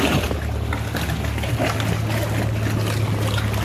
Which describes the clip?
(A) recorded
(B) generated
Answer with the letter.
A